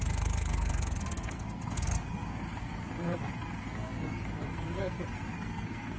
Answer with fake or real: fake